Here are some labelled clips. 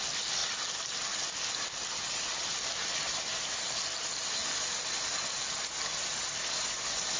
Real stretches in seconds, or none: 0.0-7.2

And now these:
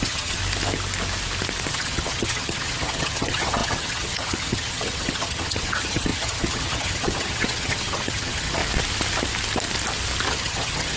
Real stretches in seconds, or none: 0.4-1.7; 8.6-10.3

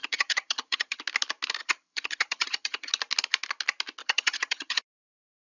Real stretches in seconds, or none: 1.0-1.6; 2.9-4.0; 4.8-5.5

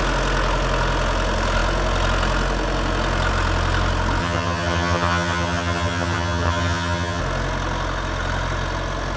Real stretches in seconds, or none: 0.0-4.2; 7.2-9.2

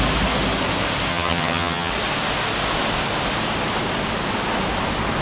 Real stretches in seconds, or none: 0.0-1.1; 1.9-5.2

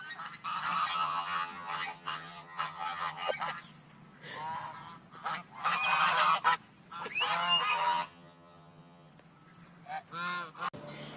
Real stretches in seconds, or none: 0.0-0.9; 3.3-7.7; 9.1-11.2